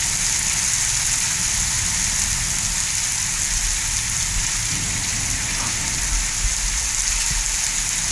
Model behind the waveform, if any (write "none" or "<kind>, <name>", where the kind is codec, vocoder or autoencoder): none